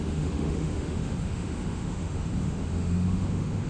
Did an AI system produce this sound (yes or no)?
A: yes